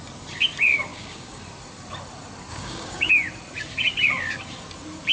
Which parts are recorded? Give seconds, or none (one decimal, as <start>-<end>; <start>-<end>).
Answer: 0.0-0.9; 1.4-2.5; 3.1-5.1